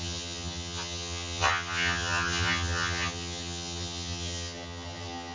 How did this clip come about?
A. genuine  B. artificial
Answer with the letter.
B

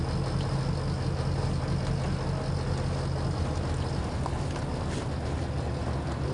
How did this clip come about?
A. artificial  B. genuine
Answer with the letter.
B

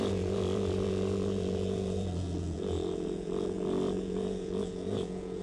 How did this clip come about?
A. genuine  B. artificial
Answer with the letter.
B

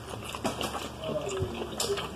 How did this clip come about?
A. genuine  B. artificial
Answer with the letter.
A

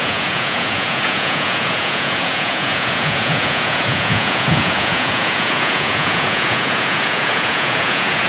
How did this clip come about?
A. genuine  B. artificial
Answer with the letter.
B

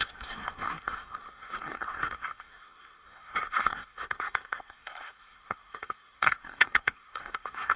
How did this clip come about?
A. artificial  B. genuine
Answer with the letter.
A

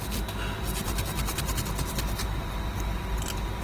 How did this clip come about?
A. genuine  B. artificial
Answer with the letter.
A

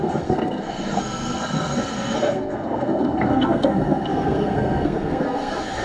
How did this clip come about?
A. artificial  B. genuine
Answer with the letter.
A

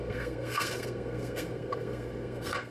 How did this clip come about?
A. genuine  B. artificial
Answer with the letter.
B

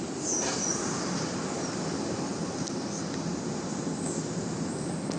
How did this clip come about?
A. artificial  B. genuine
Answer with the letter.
B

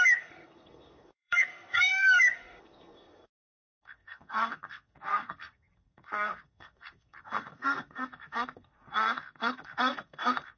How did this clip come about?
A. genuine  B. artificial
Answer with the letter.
B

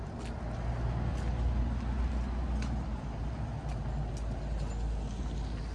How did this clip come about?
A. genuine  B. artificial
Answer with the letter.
A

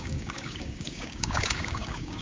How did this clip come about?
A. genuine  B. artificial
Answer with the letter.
B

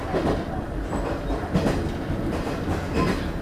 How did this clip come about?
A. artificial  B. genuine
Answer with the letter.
B